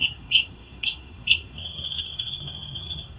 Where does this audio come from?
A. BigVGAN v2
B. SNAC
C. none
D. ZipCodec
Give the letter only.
B